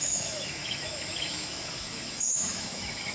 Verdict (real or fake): fake